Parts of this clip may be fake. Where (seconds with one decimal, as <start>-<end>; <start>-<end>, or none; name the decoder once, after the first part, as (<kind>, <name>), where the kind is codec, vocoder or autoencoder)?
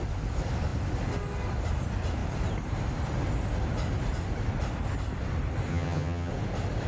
5.7-6.3 (vocoder, HiFi-GAN)